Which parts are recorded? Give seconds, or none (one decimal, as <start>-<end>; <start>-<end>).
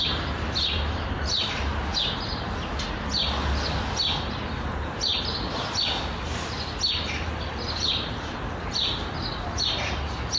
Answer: 0.0-10.4